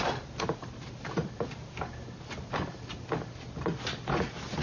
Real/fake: real